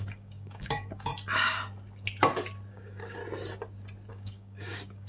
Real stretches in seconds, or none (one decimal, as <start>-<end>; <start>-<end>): 1.1-2.7; 3.2-4.1